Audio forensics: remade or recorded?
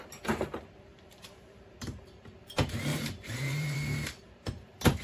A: remade